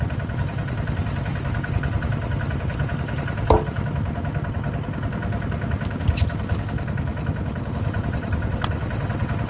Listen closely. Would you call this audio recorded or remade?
recorded